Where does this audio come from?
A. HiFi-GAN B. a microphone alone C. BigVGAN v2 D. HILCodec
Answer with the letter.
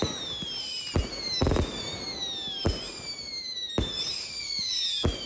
B